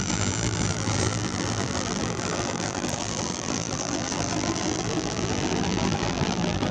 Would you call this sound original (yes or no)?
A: no